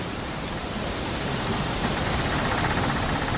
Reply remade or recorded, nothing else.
remade